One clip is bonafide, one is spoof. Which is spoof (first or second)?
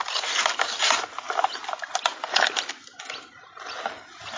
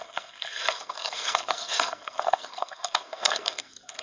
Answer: second